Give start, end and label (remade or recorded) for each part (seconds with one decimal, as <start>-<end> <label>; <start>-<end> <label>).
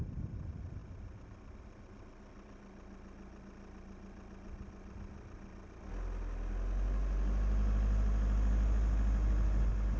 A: 0.0-10.0 recorded